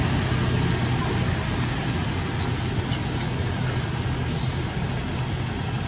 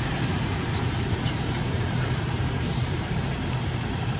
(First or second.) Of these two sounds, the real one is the first